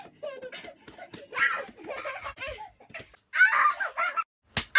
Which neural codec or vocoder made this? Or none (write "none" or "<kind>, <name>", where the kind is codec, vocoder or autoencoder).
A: none